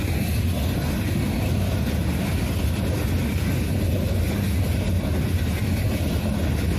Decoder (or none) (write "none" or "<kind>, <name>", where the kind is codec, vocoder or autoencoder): none